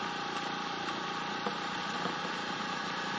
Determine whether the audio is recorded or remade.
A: recorded